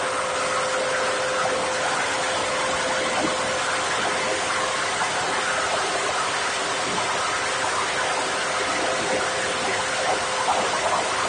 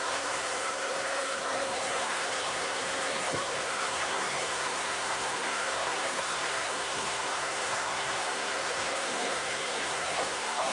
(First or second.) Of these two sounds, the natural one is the first